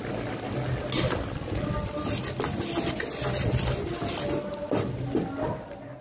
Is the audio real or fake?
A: real